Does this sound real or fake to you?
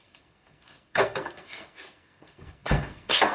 fake